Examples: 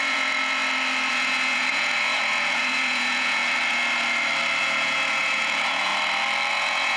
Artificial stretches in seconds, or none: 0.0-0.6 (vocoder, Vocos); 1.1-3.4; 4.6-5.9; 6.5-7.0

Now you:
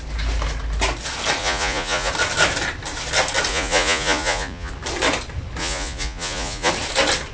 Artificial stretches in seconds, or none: 1.4-2.1 (vocoder, Vocos); 3.5-4.7; 5.6-6.7